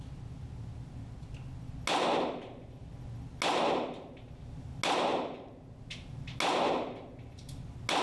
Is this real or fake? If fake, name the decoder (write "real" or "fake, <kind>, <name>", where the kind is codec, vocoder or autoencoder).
real